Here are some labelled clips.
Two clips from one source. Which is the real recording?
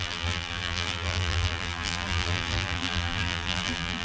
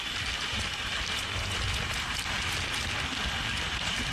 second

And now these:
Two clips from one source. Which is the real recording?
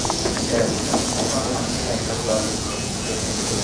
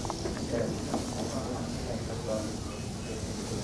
second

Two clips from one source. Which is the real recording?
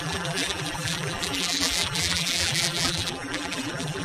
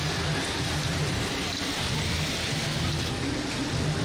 second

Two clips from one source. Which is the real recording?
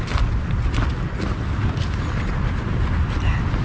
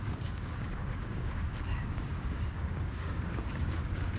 first